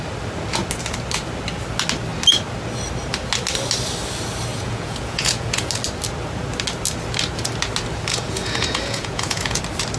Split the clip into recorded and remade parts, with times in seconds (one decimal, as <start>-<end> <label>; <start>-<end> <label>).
0.0-4.5 recorded; 4.5-5.7 remade; 5.7-8.1 recorded; 8.1-9.6 remade; 9.6-10.0 recorded